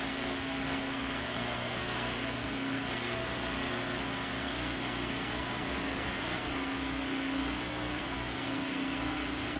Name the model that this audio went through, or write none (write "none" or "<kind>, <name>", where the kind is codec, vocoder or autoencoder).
codec, SNAC